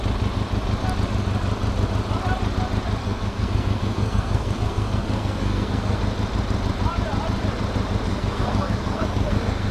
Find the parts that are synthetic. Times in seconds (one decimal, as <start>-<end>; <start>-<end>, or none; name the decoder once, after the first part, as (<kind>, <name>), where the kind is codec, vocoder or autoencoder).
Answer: 3.0-6.0 (codec, SNAC); 8.1-9.7